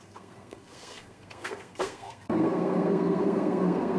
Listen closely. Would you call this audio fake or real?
fake